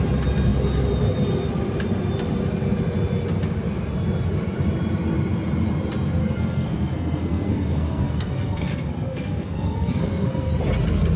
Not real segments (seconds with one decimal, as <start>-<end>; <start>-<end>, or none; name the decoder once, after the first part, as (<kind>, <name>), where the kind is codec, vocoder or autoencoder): 6.2-10.5 (codec, SNAC)